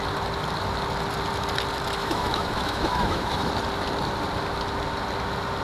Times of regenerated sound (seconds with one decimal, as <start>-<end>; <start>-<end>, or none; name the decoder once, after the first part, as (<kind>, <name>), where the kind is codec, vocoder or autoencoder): 2.0-3.5 (autoencoder, DAC-VAE)